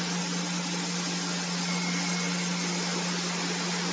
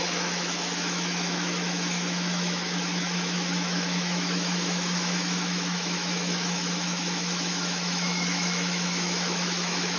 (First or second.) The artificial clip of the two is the second